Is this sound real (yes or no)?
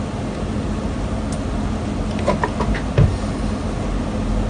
yes